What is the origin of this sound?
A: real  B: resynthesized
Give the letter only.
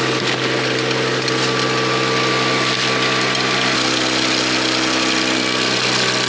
A